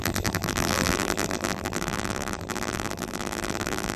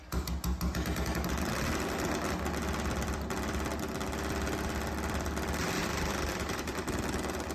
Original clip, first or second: second